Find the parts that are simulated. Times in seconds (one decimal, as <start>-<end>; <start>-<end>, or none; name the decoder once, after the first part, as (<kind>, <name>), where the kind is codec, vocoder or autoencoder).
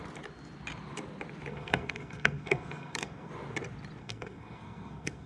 1.5-3.3 (codec, SNAC); 4.0-5.3